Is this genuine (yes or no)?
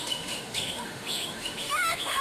no